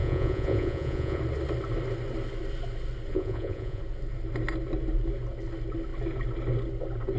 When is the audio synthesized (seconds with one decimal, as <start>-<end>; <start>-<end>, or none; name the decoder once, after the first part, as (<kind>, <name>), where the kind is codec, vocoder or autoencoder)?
0.0-1.2 (vocoder, Vocos); 3.1-3.8